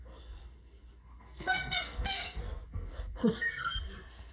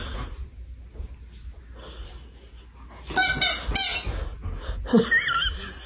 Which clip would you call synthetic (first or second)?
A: first